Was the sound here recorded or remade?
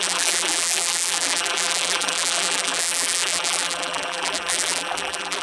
remade